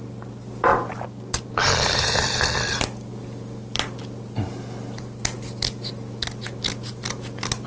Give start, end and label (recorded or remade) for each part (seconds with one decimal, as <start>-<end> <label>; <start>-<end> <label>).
0.0-7.7 recorded